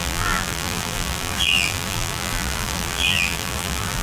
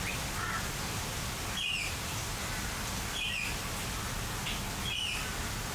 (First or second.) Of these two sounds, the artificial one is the first